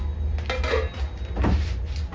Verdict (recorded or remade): recorded